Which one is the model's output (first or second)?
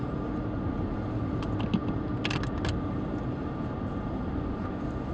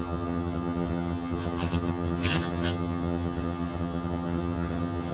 second